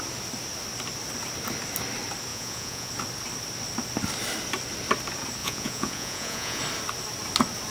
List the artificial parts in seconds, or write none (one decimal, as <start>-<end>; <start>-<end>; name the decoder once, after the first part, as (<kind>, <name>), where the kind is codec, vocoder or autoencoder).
2.3-2.9 (vocoder, Vocos); 5.4-6.6